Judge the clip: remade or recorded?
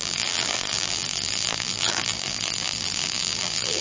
remade